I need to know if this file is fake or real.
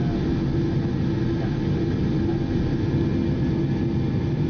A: real